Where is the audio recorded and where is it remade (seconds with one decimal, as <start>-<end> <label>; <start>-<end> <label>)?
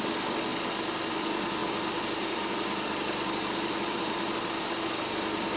0.0-5.6 recorded